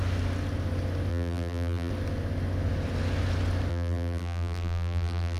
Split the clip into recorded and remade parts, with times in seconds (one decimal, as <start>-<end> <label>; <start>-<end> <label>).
0.0-1.1 recorded; 1.1-1.9 remade; 1.9-3.7 recorded; 3.7-5.4 remade